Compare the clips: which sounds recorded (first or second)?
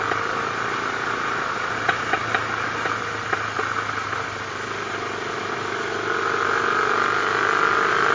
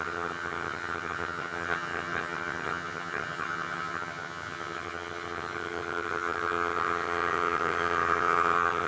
first